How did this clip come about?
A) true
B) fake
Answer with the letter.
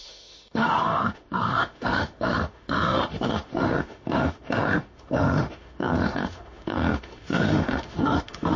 B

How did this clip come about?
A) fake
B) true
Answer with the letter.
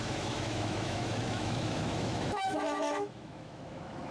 A